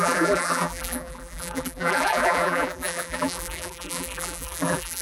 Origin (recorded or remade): remade